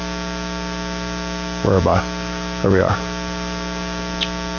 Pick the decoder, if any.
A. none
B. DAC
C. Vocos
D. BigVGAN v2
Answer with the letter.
A